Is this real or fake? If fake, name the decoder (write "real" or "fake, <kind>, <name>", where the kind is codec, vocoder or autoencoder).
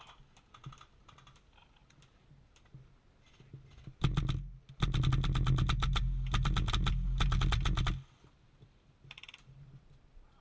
real